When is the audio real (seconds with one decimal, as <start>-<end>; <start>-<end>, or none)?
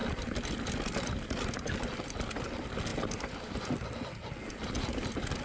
0.0-5.4